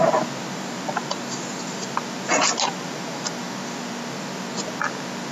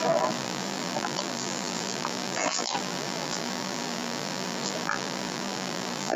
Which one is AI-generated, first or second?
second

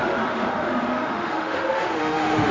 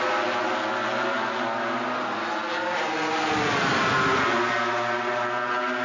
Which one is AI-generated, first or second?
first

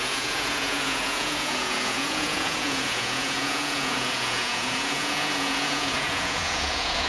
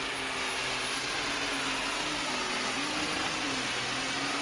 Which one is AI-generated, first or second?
first